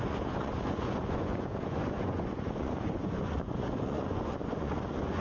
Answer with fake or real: fake